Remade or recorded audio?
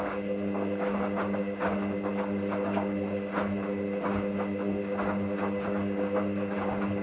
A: recorded